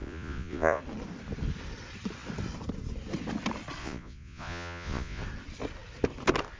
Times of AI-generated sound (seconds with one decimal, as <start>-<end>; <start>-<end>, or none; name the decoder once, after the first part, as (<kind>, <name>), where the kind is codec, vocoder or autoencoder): 0.0-0.8 (vocoder, Vocos); 3.8-5.2